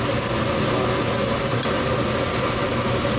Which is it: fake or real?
real